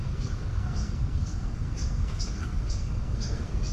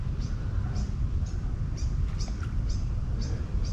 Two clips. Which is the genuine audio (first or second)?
second